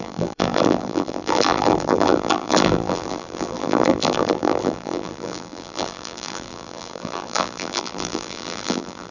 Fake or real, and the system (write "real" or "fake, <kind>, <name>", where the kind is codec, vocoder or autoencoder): fake, vocoder, BigVGAN v2